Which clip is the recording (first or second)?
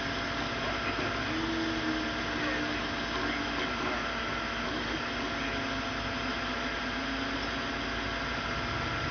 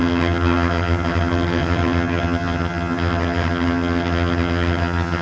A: first